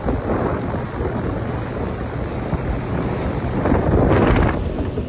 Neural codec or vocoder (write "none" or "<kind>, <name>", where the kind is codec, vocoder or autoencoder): none